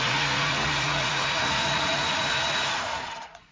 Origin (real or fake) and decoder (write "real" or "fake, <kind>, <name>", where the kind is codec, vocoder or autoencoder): fake, vocoder, Vocos